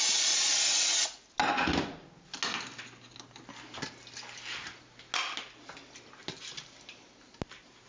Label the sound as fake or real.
real